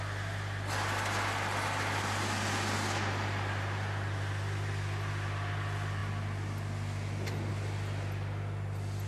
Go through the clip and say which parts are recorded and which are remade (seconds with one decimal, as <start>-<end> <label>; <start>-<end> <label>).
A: 0.0-9.1 recorded